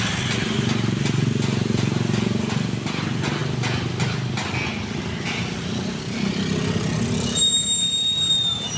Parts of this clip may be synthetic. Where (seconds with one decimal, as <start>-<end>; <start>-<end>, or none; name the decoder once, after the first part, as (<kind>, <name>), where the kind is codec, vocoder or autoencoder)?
none